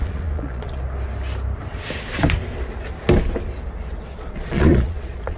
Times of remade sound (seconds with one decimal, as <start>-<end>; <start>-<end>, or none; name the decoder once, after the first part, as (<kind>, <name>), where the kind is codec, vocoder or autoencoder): 0.0-0.8 (vocoder, Vocos); 4.0-5.4